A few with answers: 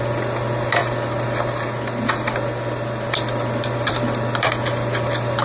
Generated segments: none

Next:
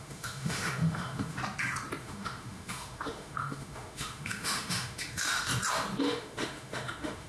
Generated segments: 0.0-1.4 (autoencoder, DAC-VAE); 2.0-5.5; 6.0-7.3